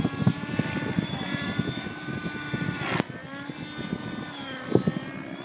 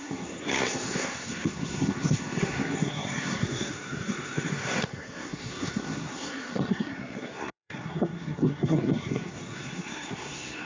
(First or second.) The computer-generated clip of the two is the second